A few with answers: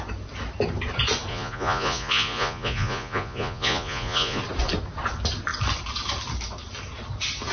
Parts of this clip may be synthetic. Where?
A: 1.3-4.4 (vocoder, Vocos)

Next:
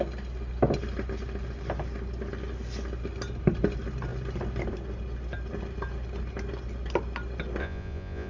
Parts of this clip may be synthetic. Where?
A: 7.6-8.3 (vocoder, Vocos)

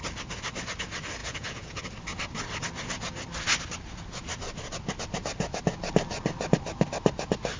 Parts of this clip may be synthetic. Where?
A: 1.2-1.8 (vocoder, Vocos)

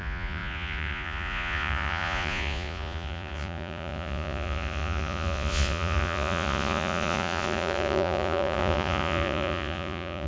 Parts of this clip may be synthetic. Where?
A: 0.0-10.3 (vocoder, Vocos)